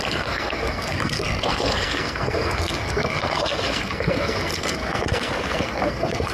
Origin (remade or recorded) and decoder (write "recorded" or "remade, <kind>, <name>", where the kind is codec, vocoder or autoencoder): remade, codec, SNAC